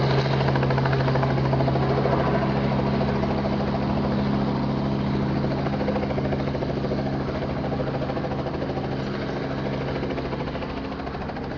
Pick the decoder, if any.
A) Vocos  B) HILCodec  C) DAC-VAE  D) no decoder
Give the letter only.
D